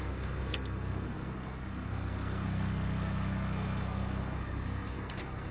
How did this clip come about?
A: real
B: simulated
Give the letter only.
B